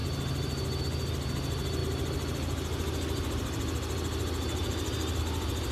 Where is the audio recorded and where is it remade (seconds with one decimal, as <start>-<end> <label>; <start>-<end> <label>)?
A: 0.0-5.7 recorded